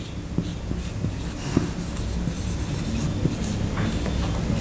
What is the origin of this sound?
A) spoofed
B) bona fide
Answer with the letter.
B